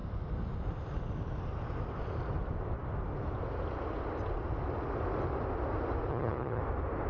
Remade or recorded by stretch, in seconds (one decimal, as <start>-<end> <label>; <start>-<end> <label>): 0.0-6.1 recorded; 6.1-6.6 remade; 6.6-7.1 recorded